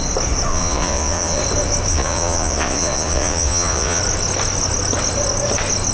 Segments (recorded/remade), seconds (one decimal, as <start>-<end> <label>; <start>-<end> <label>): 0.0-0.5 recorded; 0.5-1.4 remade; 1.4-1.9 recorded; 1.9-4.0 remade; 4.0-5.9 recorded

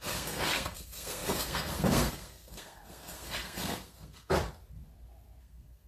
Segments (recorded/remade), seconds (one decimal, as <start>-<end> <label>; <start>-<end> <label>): 0.0-4.3 remade; 4.3-5.4 recorded; 5.4-5.9 remade

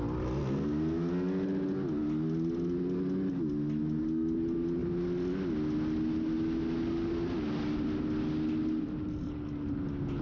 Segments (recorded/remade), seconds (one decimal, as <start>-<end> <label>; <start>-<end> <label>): 0.0-10.2 recorded

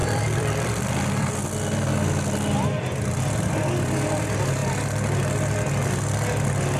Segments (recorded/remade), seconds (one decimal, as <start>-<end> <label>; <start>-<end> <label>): 0.0-1.3 remade; 1.3-6.8 recorded

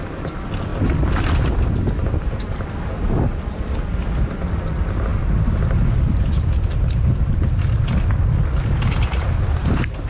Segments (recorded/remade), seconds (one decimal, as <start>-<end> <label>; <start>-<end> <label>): 0.0-10.1 recorded